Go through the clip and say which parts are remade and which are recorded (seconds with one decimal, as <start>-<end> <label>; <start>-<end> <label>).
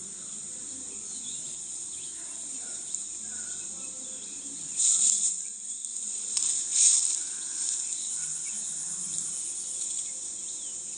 0.0-11.0 recorded